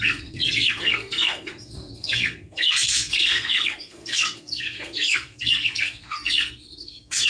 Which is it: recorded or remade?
remade